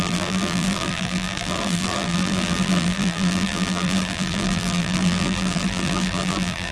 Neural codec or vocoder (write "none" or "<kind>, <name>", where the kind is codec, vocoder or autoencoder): vocoder, BigVGAN v2